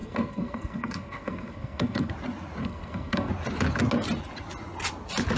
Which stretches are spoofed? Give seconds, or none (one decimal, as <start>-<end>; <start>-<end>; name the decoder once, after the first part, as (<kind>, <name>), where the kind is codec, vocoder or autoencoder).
0.0-2.1 (codec, SNAC); 2.6-3.3